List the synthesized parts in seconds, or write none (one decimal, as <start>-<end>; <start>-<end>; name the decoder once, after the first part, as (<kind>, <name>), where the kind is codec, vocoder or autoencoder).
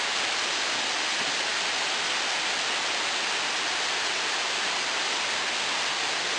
none